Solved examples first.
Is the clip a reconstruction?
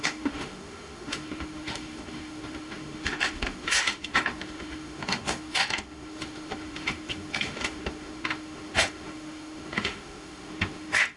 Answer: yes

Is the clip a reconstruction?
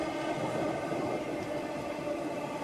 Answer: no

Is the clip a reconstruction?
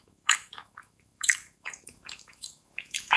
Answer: yes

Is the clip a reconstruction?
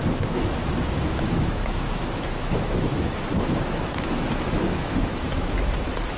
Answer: yes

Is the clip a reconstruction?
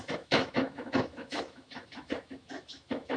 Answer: yes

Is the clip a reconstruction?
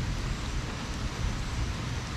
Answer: no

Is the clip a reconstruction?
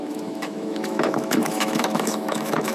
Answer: yes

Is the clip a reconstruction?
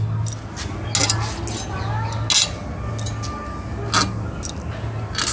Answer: no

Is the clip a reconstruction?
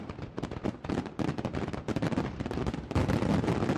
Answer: no